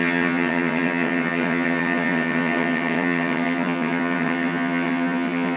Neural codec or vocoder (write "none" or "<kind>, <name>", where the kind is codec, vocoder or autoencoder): vocoder, HiFi-GAN